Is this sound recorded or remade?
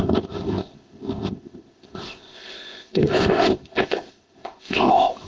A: remade